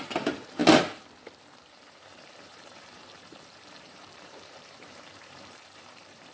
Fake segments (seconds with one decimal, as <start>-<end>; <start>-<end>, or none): 0.0-0.6; 1.7-6.3